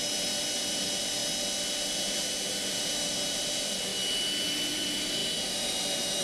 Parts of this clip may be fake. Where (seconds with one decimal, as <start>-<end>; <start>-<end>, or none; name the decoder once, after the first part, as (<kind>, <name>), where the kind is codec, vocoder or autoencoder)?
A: 0.0-1.2 (vocoder, BigVGAN v2); 2.7-3.9; 4.7-6.2